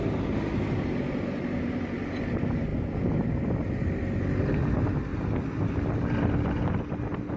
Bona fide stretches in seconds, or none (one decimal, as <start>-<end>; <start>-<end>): 0.0-7.4